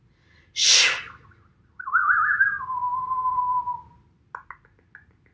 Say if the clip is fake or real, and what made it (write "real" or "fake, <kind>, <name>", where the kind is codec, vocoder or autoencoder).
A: real